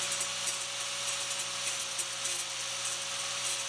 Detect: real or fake real